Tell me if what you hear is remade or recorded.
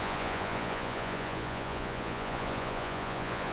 remade